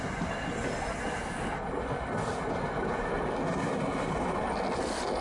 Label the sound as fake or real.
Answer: real